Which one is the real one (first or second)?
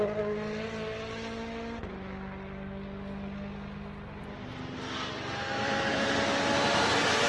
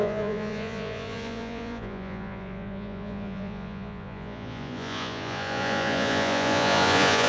first